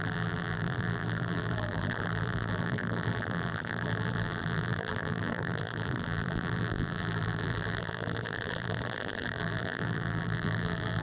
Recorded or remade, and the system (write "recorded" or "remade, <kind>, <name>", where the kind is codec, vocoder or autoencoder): remade, vocoder, BigVGAN v2